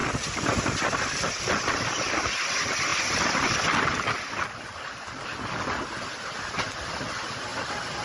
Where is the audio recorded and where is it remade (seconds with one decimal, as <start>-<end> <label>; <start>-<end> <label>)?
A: 0.0-8.0 recorded